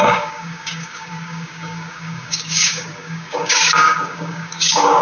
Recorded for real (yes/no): no